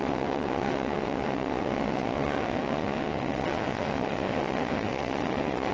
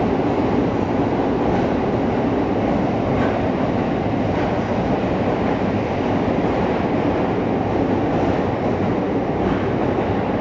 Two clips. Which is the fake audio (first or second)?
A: first